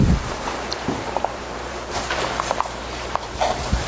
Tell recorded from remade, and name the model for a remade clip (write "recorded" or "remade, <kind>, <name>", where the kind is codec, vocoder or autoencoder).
remade, vocoder, BigVGAN v2